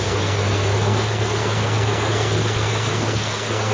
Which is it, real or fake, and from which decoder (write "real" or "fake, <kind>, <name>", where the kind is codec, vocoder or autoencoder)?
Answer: fake, codec, SNAC